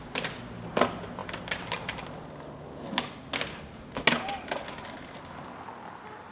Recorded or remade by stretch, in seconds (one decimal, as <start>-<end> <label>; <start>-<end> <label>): 0.0-6.3 recorded